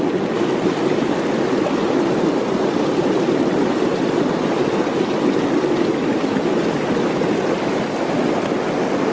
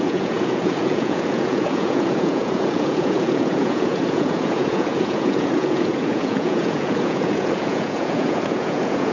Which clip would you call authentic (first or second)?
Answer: first